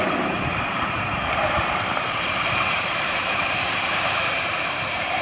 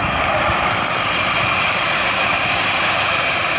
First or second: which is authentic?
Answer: second